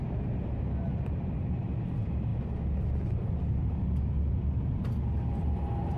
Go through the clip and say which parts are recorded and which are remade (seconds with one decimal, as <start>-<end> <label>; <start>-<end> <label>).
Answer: 0.0-6.0 recorded